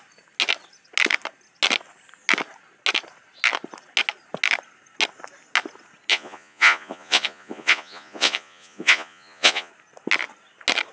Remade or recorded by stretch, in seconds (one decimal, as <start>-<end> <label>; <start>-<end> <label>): 0.0-6.1 recorded; 6.1-9.7 remade; 9.7-10.9 recorded